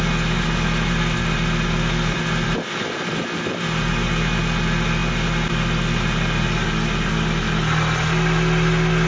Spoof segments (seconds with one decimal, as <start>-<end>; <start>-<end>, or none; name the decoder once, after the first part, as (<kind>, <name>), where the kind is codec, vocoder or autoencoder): none